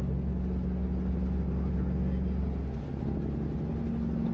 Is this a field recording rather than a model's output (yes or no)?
yes